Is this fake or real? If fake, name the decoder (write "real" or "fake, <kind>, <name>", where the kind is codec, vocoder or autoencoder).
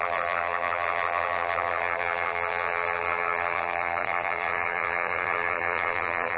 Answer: fake, vocoder, BigVGAN v2